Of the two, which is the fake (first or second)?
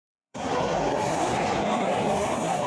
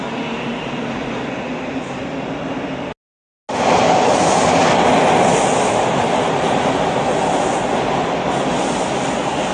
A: first